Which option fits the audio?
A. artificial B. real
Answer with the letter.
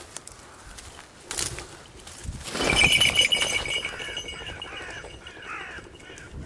B